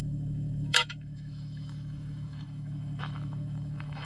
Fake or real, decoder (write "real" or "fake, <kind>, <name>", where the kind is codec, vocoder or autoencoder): fake, autoencoder, DAC-VAE